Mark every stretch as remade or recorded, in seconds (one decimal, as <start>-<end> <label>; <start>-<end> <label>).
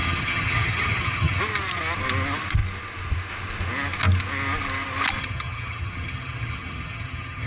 0.0-1.4 remade; 1.4-5.2 recorded; 5.2-7.5 remade